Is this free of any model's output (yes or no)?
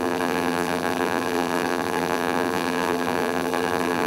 no